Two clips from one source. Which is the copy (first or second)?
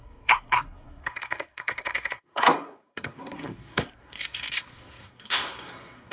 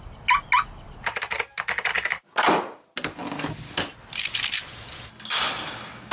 first